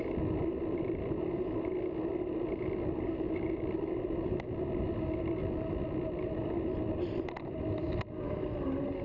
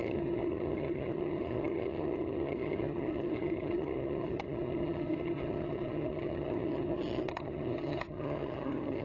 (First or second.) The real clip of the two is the first